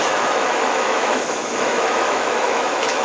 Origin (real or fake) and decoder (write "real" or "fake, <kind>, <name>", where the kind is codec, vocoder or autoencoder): fake, autoencoder, DAC-VAE